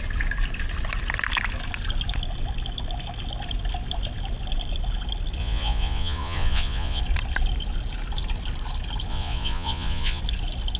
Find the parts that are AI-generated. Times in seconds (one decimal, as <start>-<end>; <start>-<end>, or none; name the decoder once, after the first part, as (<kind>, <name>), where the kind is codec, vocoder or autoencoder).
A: 5.4-7.0 (vocoder, Vocos); 9.1-10.2